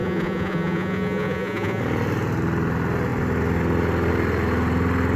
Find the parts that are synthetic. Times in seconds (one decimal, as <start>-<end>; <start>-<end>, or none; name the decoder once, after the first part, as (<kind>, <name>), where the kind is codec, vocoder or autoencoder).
0.0-1.8 (vocoder, Vocos)